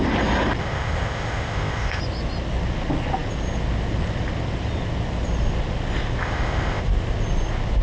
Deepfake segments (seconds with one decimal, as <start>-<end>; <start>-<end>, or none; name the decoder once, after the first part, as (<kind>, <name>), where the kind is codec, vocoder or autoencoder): 0.6-2.0 (codec, ZipCodec); 6.2-6.8